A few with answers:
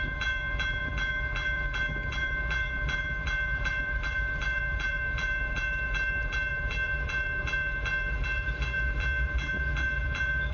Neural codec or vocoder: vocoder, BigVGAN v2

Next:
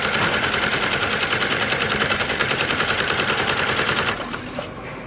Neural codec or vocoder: vocoder, BigVGAN v2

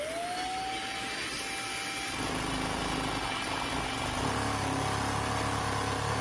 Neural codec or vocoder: none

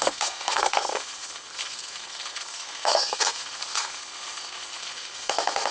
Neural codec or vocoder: codec, SNAC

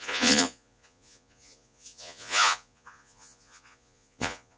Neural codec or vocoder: vocoder, Vocos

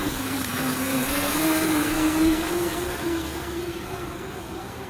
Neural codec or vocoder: codec, SNAC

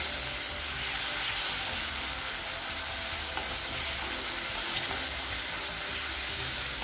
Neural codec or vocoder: none